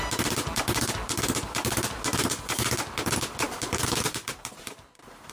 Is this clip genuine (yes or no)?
yes